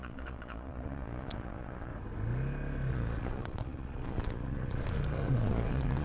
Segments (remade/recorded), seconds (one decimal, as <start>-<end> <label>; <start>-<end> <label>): 0.0-1.9 remade; 1.9-2.9 recorded; 2.9-6.0 remade